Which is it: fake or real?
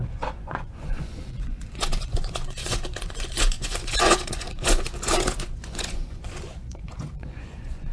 fake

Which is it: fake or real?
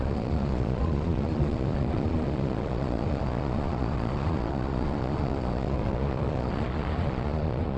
fake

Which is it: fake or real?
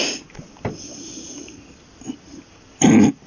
real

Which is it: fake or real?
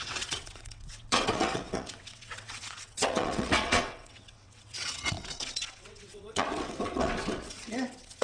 fake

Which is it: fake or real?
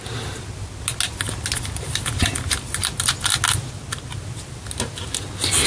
real